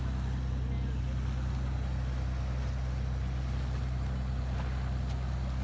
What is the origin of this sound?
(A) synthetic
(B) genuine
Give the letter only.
B